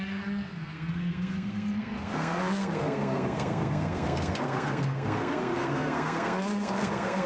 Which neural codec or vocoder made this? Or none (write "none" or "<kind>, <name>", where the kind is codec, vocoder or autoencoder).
codec, SNAC